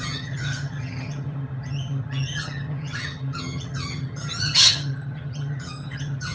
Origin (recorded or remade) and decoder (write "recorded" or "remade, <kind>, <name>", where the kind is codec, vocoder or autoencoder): remade, vocoder, HiFi-GAN